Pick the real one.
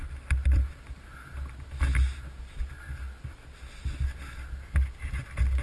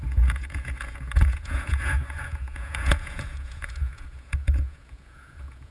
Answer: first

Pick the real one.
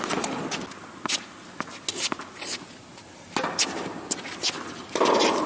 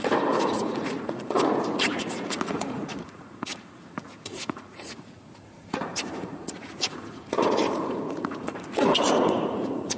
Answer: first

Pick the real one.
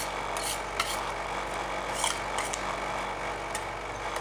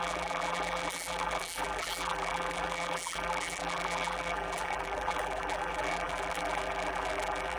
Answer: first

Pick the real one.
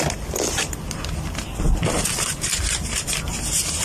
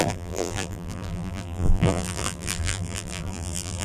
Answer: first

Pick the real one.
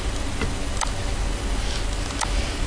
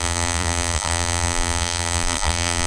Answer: first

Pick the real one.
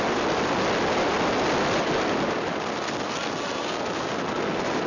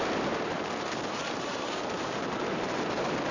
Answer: first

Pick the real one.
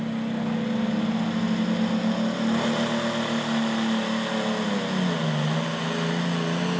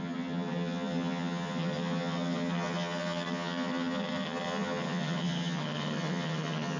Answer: first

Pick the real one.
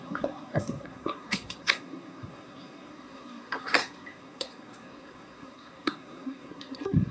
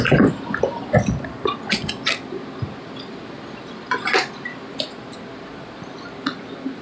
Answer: second